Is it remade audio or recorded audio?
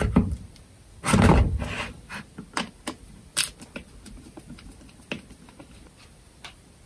recorded